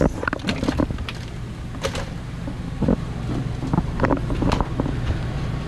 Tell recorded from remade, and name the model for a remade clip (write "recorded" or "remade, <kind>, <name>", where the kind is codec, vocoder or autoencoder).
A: recorded